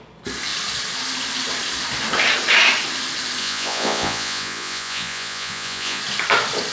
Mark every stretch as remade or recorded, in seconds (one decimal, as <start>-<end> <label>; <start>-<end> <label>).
0.0-3.4 recorded; 3.4-6.0 remade; 6.0-6.7 recorded